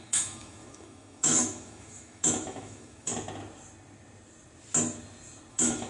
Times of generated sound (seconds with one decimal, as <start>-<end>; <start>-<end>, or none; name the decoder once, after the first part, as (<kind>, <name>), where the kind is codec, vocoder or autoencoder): 0.0-3.1 (autoencoder, DAC-VAE); 5.5-5.9

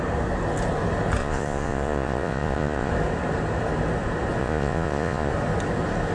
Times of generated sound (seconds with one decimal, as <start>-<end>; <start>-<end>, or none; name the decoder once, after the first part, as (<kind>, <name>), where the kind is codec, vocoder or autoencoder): 1.2-2.9 (vocoder, Vocos); 4.4-5.3

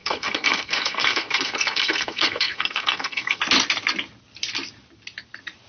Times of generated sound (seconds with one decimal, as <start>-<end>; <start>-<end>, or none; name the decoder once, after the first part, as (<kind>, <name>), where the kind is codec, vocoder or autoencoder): 0.0-3.4 (codec, SNAC)

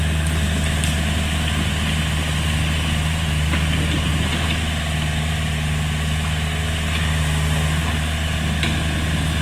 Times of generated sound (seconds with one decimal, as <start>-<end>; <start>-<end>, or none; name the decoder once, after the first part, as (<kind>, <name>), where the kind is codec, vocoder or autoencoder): none

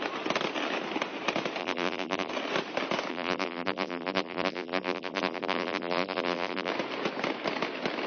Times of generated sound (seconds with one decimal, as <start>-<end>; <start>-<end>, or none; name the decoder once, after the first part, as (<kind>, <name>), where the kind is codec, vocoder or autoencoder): 1.6-2.3 (vocoder, BigVGAN v2); 3.1-6.7

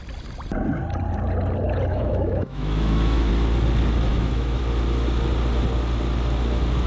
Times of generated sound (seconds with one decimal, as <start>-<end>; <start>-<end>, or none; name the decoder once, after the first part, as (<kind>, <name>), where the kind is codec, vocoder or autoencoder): 1.9-3.3 (autoencoder, DAC-VAE); 4.1-4.6